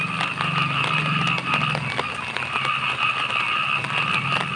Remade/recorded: recorded